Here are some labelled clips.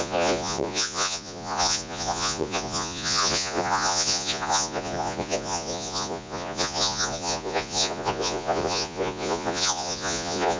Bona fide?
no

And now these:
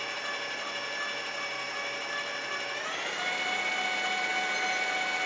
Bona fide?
yes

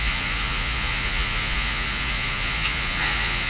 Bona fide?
no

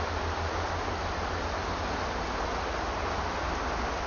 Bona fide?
yes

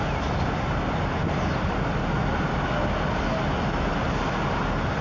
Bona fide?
yes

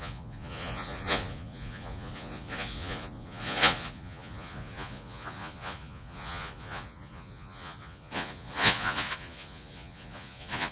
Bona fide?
no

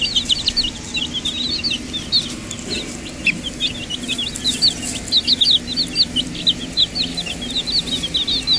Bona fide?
yes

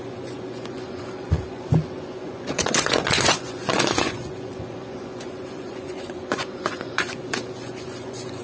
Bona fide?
no